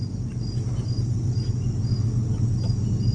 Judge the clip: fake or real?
real